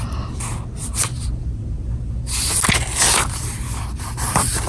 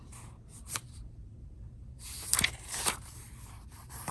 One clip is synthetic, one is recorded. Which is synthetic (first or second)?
second